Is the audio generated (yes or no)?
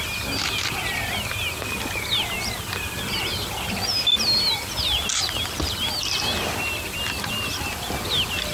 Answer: no